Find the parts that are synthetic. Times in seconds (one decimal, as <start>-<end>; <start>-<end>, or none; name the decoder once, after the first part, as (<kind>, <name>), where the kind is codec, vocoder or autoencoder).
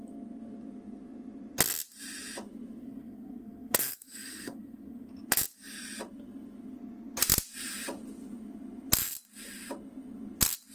2.8-5.1 (codec, SNAC)